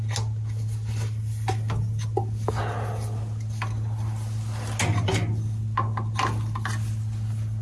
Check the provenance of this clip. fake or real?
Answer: real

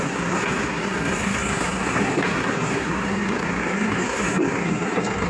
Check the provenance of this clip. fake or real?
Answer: fake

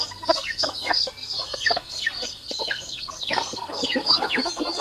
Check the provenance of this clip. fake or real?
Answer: fake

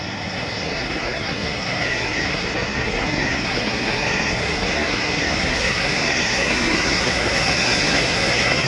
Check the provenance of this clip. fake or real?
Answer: fake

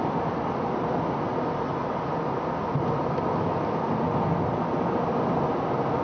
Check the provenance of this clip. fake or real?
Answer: real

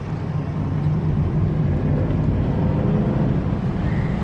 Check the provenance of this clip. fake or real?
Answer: real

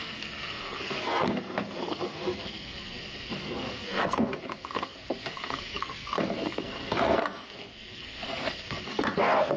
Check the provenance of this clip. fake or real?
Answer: fake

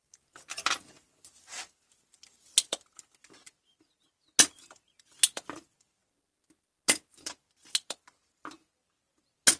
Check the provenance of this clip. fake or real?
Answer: real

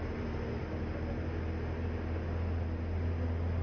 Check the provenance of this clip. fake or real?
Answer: real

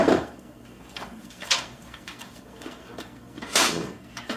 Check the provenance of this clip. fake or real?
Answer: fake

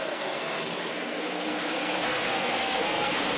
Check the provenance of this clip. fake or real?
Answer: fake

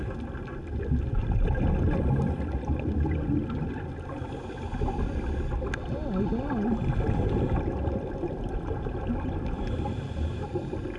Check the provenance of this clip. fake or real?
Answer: real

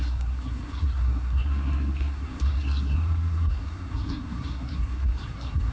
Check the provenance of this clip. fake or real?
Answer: fake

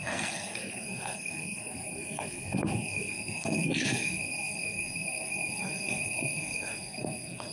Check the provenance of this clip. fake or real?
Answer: fake